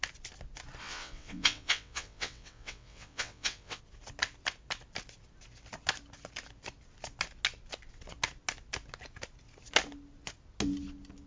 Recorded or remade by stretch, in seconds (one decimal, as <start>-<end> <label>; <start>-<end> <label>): 0.0-0.8 recorded; 0.8-3.8 remade; 3.8-11.3 recorded